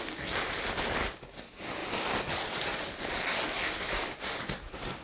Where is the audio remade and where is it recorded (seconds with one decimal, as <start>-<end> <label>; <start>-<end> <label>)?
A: 0.0-1.8 recorded; 1.8-3.0 remade; 3.0-5.0 recorded